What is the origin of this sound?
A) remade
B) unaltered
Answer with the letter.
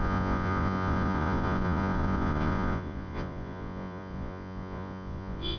A